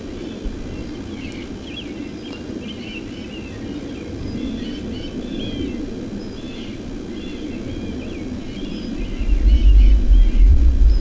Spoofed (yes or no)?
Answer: no